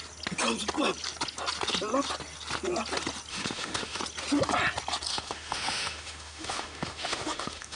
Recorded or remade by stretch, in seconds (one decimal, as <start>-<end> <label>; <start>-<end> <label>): 0.0-3.3 recorded; 3.3-4.0 remade; 4.0-5.1 recorded; 5.1-7.8 remade